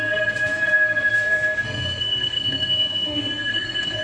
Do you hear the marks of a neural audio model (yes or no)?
yes